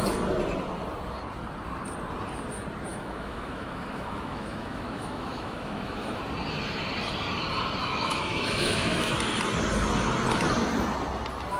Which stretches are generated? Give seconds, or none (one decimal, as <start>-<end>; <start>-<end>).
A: 2.9-6.2; 7.8-9.1